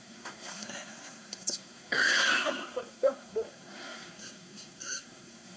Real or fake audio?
fake